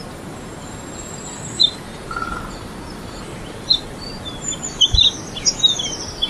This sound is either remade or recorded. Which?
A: recorded